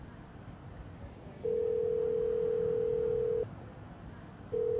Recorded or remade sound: recorded